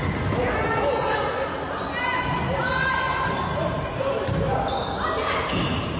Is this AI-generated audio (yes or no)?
no